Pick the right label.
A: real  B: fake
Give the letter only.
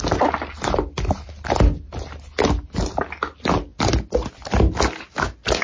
A